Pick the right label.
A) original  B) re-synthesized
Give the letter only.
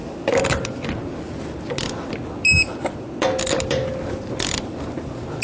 A